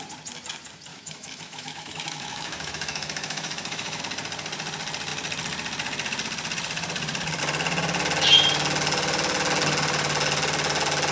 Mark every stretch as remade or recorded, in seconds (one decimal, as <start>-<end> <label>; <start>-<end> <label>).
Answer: 0.0-0.9 recorded; 0.9-4.0 remade; 4.0-11.1 recorded

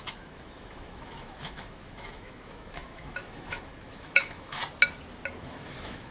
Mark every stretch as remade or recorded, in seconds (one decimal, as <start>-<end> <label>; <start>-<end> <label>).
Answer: 0.0-4.6 remade; 4.6-5.4 recorded; 5.4-6.1 remade

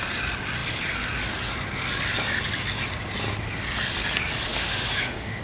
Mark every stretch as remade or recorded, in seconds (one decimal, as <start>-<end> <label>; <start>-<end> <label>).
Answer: 0.0-4.5 recorded; 4.5-5.4 remade

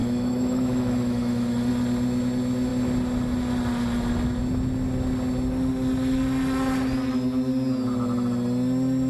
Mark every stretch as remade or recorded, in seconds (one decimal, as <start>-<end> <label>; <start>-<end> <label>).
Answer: 0.0-1.7 remade; 1.7-9.1 recorded

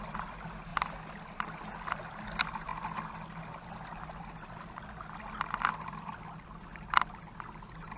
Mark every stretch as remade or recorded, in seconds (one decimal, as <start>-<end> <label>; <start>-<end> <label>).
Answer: 0.0-8.0 recorded